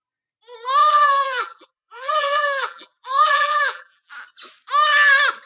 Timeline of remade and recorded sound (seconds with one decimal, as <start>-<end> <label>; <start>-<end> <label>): 0.0-0.8 recorded; 0.8-4.1 remade; 4.1-5.5 recorded